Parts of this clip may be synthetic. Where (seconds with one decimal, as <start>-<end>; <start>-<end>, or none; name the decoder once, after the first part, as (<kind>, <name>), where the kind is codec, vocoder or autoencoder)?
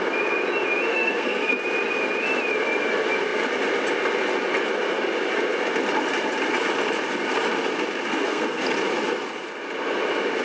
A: 0.9-1.5 (codec, SNAC); 8.1-8.6